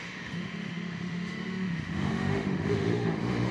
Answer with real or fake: fake